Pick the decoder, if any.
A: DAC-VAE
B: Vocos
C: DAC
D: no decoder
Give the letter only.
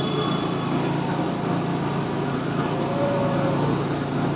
D